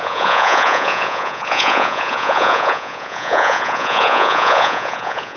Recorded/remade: remade